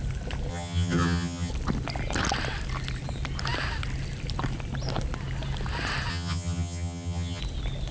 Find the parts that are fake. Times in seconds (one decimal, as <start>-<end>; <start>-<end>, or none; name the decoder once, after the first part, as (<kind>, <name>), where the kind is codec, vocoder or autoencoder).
0.5-1.5 (vocoder, HiFi-GAN); 6.1-7.4